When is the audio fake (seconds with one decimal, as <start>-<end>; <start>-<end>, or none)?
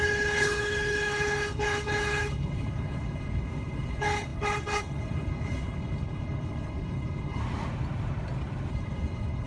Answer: 0.0-7.4; 8.7-9.5